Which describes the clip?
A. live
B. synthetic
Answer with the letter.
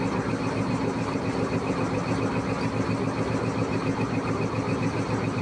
A